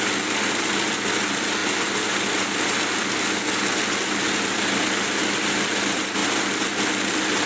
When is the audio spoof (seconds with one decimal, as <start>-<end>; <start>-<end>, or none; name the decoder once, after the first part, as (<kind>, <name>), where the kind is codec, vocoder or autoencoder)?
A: none